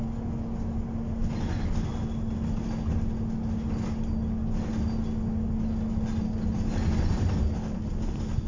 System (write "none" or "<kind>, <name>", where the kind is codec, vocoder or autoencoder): none